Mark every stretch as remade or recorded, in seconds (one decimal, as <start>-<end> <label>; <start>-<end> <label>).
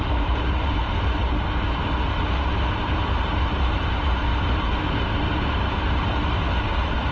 0.0-0.8 remade; 0.8-2.7 recorded; 2.7-7.1 remade